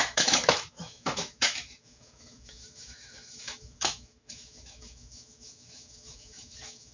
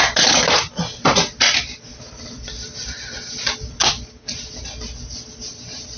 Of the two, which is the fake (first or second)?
first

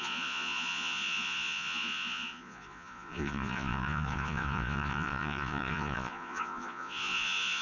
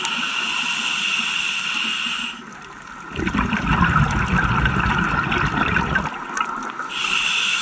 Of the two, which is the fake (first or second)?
first